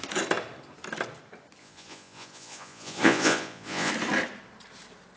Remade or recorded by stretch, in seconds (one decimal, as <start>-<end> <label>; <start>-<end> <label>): 0.0-1.6 recorded; 1.6-3.9 remade; 3.9-5.2 recorded